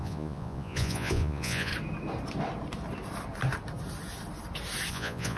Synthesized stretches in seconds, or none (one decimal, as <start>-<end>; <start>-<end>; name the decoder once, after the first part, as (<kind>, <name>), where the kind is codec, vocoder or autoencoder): 0.0-1.7 (vocoder, Vocos); 4.9-5.4